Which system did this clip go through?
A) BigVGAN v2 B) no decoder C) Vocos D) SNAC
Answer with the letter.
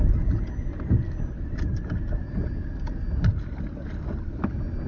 B